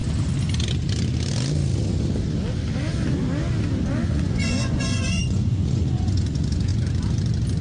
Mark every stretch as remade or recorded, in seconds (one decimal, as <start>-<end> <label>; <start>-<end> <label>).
0.0-4.1 recorded; 4.1-6.7 remade; 6.7-7.6 recorded